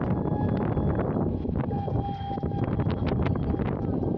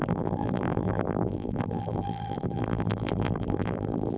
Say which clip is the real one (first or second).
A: first